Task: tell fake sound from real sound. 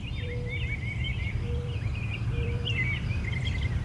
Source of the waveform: fake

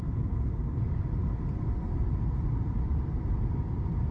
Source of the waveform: fake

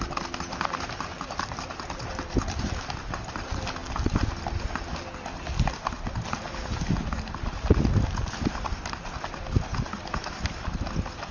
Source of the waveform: real